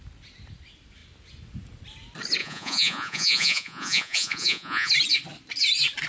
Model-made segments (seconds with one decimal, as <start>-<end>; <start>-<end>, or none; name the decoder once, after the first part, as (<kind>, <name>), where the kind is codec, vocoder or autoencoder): 2.4-4.9 (vocoder, Vocos)